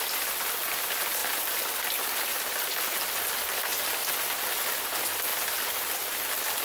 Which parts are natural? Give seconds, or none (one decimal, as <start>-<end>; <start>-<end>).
0.0-1.2; 2.8-5.3; 5.9-6.6